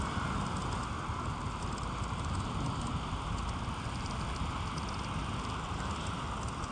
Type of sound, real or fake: real